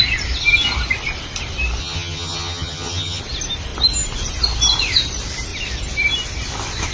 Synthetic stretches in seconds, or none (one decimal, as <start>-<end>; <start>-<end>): 1.8-3.2